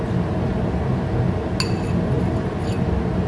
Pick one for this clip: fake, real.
real